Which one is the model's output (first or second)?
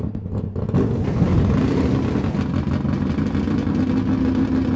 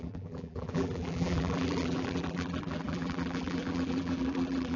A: second